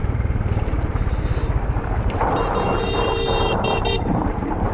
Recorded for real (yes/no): no